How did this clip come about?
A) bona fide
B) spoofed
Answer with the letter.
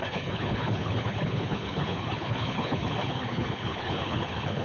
B